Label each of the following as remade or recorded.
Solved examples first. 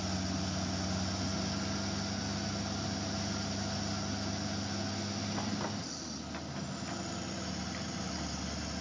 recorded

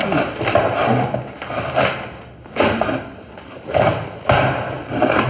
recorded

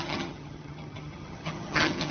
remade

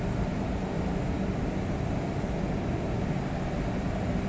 recorded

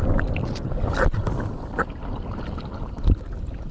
recorded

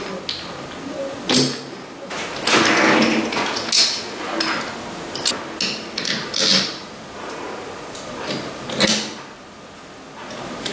recorded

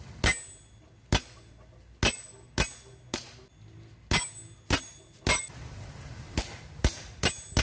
recorded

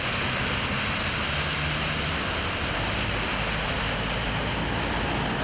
recorded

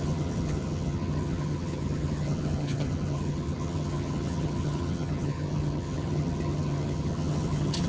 remade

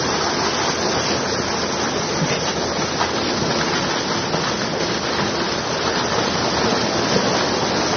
recorded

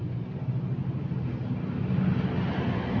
recorded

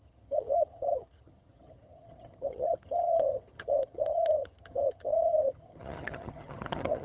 remade